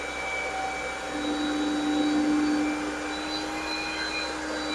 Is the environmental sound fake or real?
real